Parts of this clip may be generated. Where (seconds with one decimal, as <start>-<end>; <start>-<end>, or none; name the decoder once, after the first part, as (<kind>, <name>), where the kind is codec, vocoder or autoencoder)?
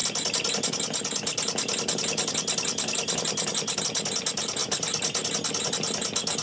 none